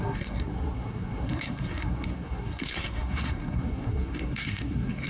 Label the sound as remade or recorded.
remade